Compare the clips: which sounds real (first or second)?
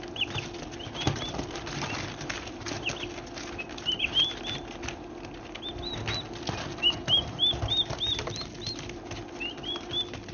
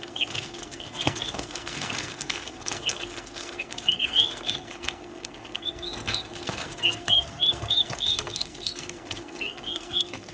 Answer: first